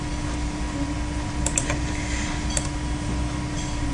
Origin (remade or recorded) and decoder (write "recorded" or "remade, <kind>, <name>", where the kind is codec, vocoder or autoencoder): recorded